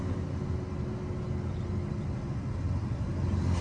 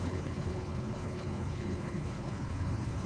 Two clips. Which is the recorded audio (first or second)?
first